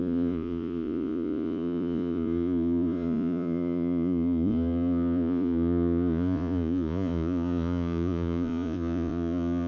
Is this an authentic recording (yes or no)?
no